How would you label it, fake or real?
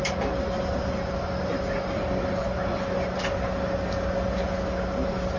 real